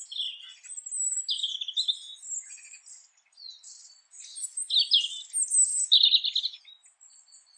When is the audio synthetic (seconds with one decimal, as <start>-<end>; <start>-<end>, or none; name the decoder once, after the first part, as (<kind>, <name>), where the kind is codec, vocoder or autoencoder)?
none